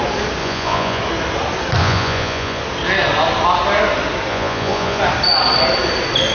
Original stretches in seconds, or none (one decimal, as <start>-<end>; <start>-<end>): 0.0-0.4; 1.0-1.8; 2.6-4.3; 5.0-6.3